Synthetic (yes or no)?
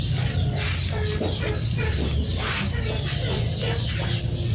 no